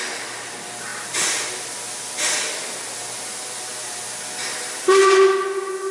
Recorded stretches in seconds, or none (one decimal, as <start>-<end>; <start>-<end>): 0.0-5.9